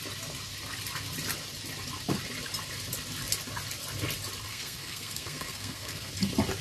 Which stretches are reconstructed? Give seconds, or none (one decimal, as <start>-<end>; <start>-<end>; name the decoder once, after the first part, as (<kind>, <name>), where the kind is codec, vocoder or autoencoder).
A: 4.5-6.1 (codec, SNAC)